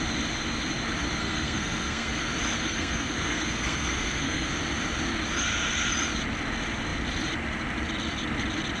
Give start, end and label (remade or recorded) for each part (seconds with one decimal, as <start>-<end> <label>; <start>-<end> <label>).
0.0-1.2 recorded; 1.2-2.2 remade; 2.2-2.6 recorded; 2.6-4.5 remade; 4.5-8.8 recorded